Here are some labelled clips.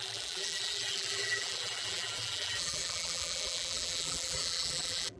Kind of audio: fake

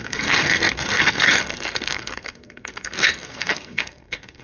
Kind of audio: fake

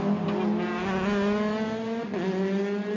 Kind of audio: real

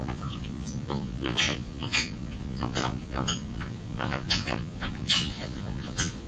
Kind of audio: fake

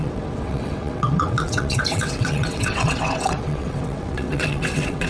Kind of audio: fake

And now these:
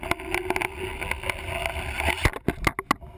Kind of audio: real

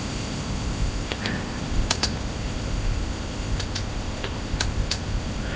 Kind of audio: fake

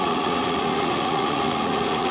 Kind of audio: fake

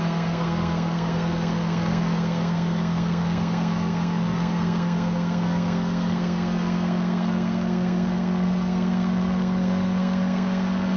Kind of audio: fake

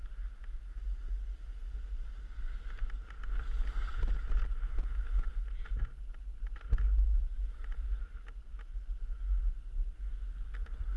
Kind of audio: real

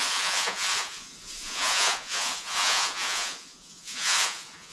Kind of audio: fake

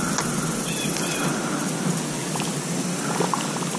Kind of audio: real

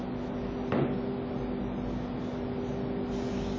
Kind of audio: real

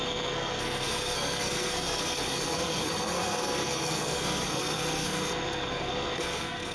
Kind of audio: fake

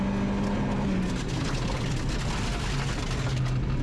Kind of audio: real